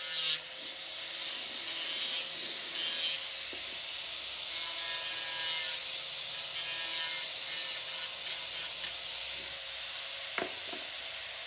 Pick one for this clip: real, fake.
real